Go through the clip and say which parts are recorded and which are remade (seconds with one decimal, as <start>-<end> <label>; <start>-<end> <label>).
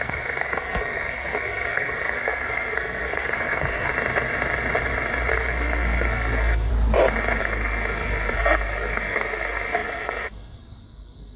0.0-3.9 remade; 3.9-5.3 recorded; 5.3-6.7 remade; 6.7-7.4 recorded; 7.4-11.4 remade